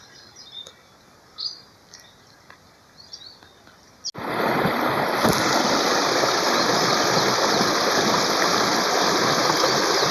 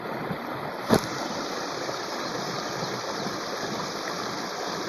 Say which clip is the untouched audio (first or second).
first